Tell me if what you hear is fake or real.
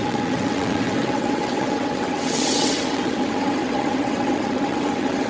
fake